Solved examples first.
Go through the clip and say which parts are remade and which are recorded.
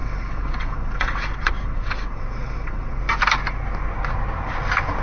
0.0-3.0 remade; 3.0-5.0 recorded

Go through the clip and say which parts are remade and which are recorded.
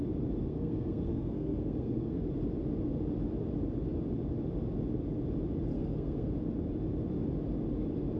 0.0-0.4 recorded; 0.4-2.2 remade; 2.2-5.7 recorded; 5.7-6.3 remade; 6.3-8.2 recorded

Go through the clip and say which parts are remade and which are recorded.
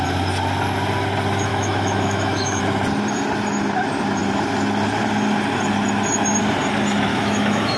0.0-1.5 recorded; 1.5-2.6 remade; 2.6-7.1 recorded; 7.1-7.8 remade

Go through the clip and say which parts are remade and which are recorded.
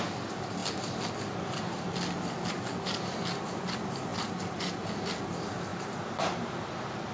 0.0-5.7 recorded; 5.7-6.6 remade; 6.6-7.1 recorded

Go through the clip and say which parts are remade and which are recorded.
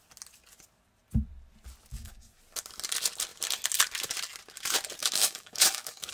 0.0-1.9 recorded; 1.9-2.4 remade; 2.4-5.0 recorded; 5.0-6.1 remade